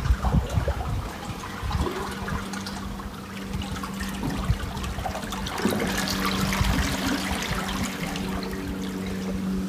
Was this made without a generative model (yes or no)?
yes